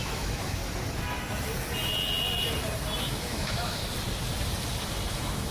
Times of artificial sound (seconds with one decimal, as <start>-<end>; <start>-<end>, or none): 0.0-0.6; 3.0-3.8; 5.1-5.5

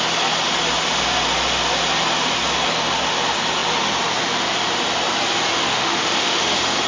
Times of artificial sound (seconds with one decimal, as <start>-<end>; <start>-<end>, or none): 5.7-6.4

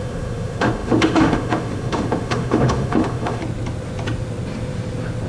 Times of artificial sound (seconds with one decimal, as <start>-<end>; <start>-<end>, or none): 0.0-3.4

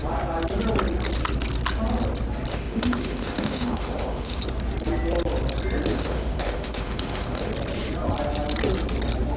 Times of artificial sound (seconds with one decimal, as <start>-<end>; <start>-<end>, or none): 2.5-4.4; 5.9-7.5

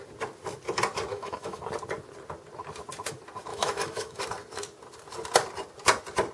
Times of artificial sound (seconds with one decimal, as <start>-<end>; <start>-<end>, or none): 1.1-1.6; 3.5-4.2

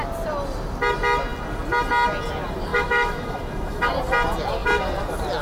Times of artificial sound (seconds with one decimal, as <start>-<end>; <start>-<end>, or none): 2.7-3.9